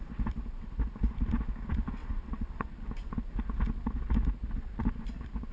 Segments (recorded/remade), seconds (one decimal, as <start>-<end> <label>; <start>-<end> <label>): 0.0-2.0 recorded; 2.0-2.7 remade; 2.7-5.5 recorded